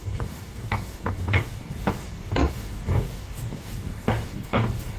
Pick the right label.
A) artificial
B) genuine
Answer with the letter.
A